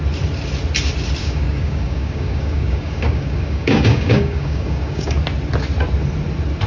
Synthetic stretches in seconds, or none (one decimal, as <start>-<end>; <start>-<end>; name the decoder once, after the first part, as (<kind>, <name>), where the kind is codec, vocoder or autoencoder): 1.2-5.2 (codec, DAC)